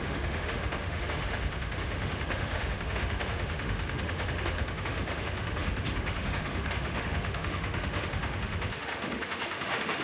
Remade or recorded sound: remade